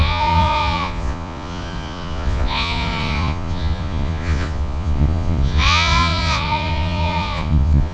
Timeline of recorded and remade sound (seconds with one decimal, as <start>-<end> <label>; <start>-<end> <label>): 0.0-7.9 remade